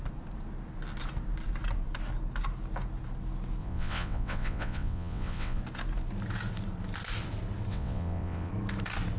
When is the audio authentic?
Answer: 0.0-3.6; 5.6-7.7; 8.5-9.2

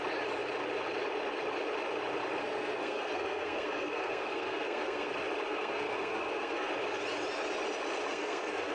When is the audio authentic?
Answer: 0.0-2.4; 5.1-5.5; 6.7-8.1

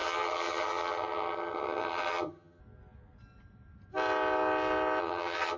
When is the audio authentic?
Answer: 2.6-5.0

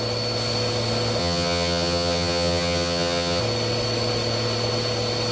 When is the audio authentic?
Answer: 0.0-1.2; 3.4-5.3

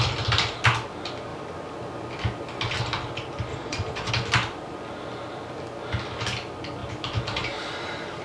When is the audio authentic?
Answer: 0.0-3.5; 4.1-8.2

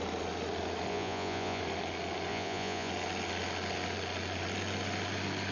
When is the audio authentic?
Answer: 0.0-0.9; 1.6-2.3; 2.9-5.5

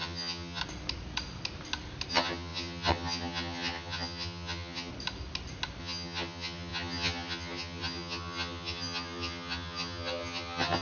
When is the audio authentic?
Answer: 0.6-2.1; 4.9-5.8